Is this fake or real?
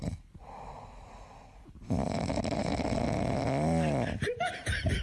fake